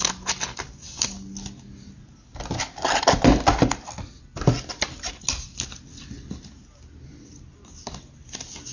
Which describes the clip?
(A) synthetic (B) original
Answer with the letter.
B